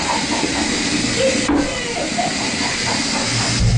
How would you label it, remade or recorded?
recorded